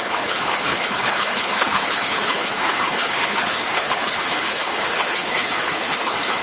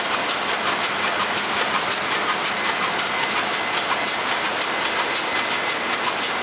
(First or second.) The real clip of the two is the second